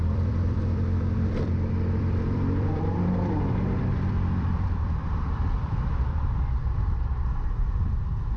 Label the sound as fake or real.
fake